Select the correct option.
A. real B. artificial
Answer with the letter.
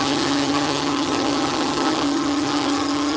B